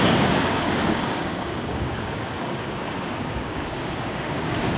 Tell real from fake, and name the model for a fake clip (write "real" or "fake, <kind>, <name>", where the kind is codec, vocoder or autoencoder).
fake, codec, DAC